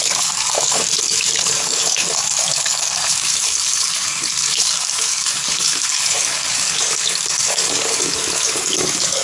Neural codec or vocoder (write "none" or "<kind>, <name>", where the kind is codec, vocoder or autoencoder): codec, DAC